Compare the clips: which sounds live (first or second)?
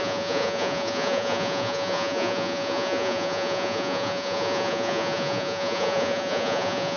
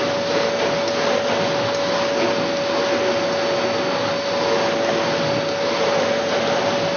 second